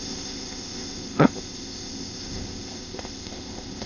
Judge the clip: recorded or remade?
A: remade